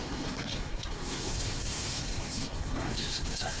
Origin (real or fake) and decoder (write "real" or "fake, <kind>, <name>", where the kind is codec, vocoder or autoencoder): fake, codec, SNAC